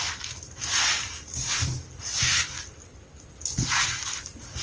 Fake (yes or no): no